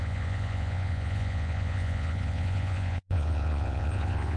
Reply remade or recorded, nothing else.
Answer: remade